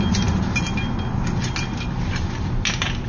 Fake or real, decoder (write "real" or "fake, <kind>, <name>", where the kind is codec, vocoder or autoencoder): real